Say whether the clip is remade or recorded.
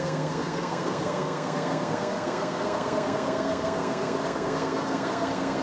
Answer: remade